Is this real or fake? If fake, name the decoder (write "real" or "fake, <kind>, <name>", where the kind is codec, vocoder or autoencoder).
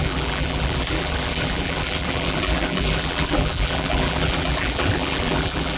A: fake, vocoder, BigVGAN v2